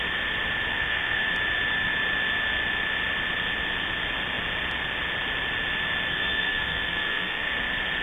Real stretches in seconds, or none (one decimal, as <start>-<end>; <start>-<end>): 0.0-0.7; 1.2-6.1; 7.5-8.0